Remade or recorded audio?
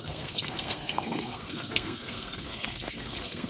remade